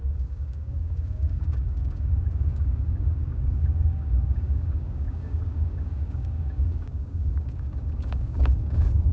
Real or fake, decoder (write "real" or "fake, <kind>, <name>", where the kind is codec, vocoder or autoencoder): fake, codec, DAC